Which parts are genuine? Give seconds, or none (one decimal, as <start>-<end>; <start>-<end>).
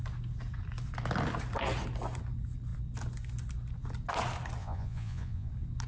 0.0-4.6; 5.5-5.9